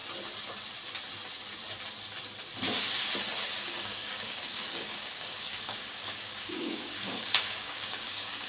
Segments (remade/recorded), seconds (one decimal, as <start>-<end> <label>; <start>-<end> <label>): 0.0-3.6 recorded; 3.6-8.5 remade